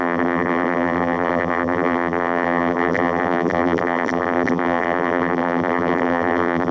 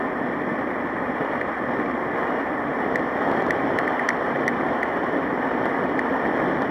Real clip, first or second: second